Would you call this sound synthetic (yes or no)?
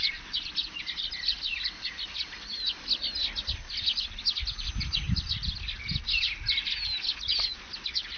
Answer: no